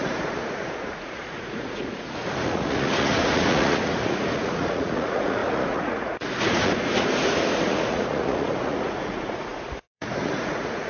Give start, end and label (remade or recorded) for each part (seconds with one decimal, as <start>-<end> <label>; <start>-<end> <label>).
0.0-10.9 remade